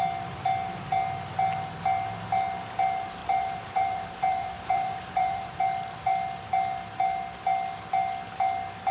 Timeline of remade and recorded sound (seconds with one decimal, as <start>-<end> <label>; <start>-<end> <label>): 0.0-3.2 recorded; 3.2-5.6 remade; 5.6-8.9 recorded